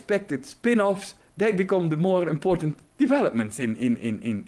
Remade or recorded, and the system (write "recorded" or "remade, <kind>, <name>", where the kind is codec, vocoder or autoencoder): remade, vocoder, WaveNeXt